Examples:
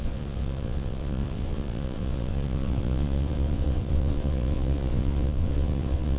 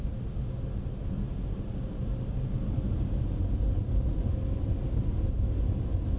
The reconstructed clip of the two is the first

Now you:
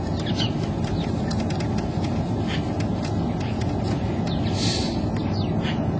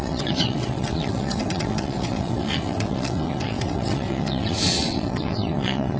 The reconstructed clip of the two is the second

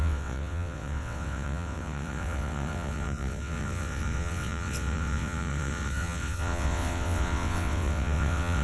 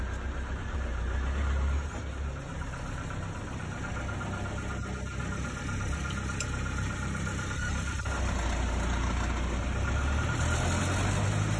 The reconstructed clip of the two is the first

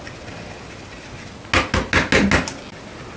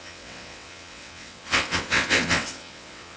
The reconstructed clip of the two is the second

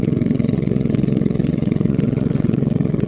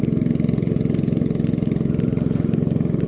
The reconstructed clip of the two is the first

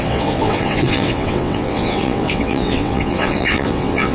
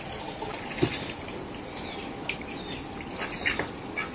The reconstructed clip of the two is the first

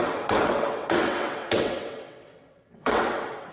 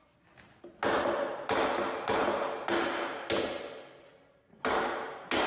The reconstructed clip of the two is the first